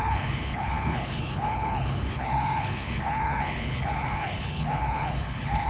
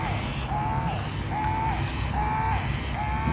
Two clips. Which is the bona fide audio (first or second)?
second